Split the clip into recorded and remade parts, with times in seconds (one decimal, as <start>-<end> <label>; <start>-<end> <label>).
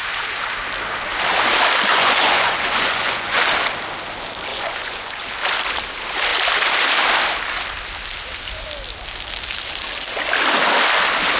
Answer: 0.0-1.9 recorded; 1.9-3.4 remade; 3.4-4.5 recorded; 4.5-5.2 remade; 5.2-11.4 recorded